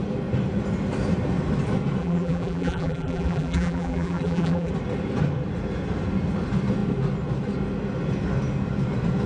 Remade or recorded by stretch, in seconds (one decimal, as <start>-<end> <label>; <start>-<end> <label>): 0.0-2.0 recorded; 2.0-4.7 remade; 4.7-9.3 recorded